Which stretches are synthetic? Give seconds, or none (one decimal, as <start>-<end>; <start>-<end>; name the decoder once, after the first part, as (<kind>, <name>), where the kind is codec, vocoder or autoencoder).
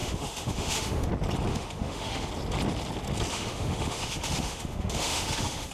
0.0-1.1 (autoencoder, DAC-VAE); 1.5-2.3; 3.3-5.7